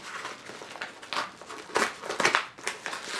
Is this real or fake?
real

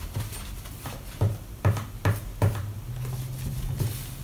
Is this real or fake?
real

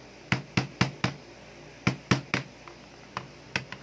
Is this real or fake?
real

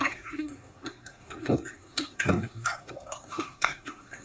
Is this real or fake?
fake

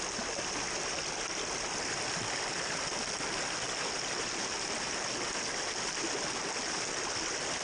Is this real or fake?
real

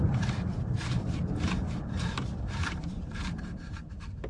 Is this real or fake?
fake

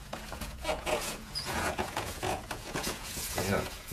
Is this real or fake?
fake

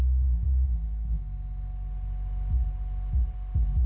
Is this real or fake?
real